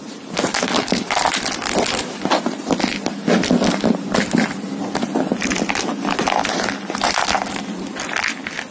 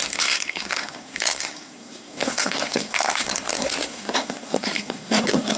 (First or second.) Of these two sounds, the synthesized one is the second